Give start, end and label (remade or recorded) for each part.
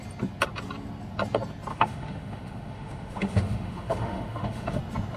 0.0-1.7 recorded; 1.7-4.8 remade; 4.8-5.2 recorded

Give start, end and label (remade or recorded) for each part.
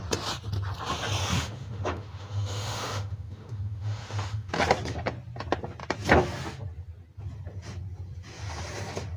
0.0-1.2 recorded; 1.2-4.5 remade; 4.5-9.2 recorded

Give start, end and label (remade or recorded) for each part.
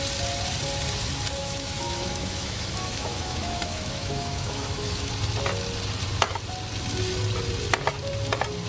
0.0-1.4 recorded; 1.4-5.1 remade; 5.1-8.7 recorded